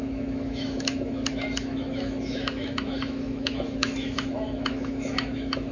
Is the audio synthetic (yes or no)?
yes